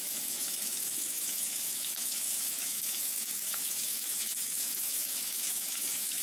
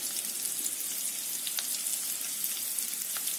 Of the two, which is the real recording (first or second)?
second